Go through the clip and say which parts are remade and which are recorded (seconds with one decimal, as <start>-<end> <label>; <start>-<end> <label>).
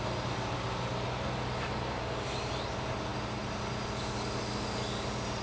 0.0-5.4 recorded